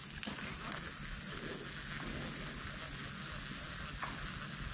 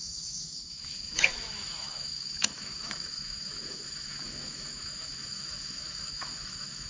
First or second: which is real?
first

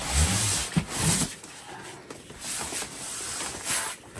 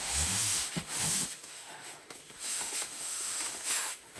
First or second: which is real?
first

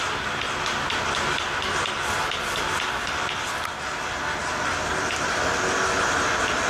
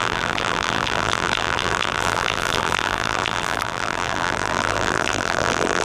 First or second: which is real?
first